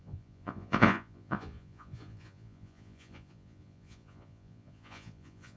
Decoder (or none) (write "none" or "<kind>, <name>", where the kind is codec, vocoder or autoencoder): vocoder, Vocos